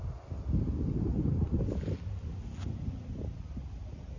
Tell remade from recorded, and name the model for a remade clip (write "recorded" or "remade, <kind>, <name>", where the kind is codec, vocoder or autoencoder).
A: recorded